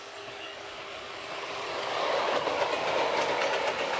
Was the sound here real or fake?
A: fake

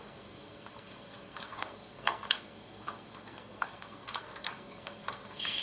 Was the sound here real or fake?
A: fake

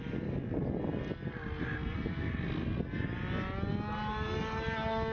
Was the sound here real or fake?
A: real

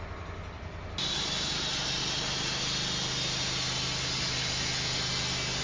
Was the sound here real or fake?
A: real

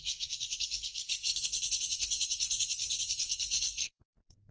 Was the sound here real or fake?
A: fake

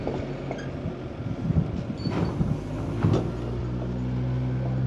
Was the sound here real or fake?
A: real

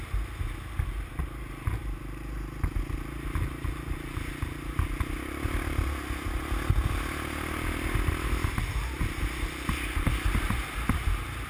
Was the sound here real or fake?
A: real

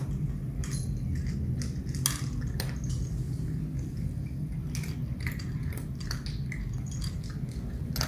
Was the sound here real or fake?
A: real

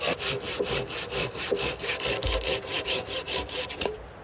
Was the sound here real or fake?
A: real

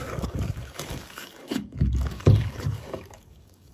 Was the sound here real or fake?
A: fake